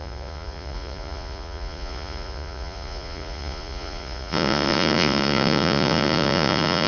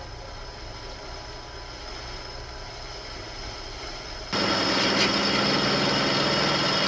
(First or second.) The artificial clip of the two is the first